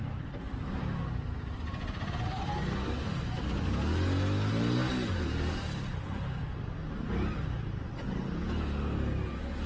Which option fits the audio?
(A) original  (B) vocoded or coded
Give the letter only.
A